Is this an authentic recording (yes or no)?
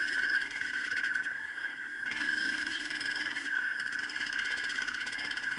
no